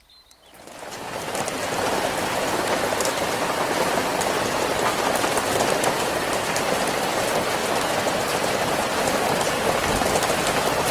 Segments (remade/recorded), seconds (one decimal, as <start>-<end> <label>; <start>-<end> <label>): 0.0-10.9 recorded